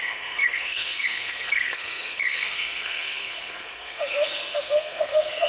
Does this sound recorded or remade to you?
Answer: remade